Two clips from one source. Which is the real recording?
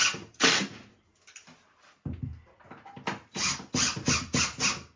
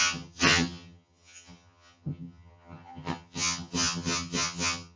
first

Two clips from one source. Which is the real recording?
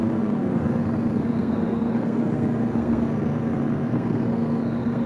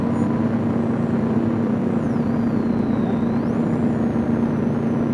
second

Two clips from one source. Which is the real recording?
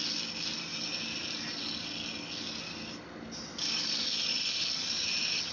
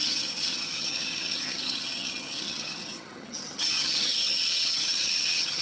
first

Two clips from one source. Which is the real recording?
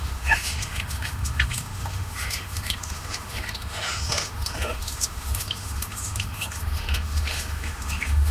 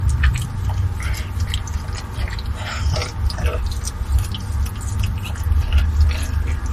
second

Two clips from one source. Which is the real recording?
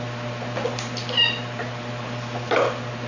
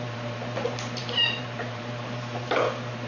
first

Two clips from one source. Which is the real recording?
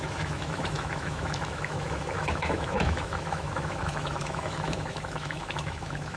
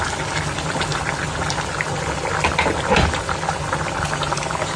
second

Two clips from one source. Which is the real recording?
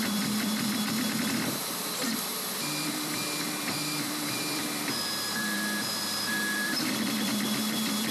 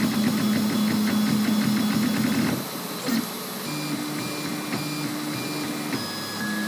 second